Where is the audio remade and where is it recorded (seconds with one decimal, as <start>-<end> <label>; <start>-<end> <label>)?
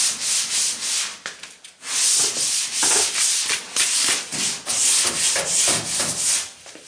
0.0-4.3 remade; 4.3-5.0 recorded; 5.0-6.9 remade